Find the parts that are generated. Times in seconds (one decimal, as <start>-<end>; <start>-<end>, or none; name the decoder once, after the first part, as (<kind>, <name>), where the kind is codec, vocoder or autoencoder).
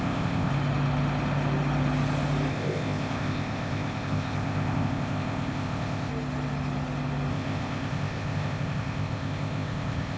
0.0-0.5 (codec, ZipCodec); 2.5-6.1; 7.3-10.2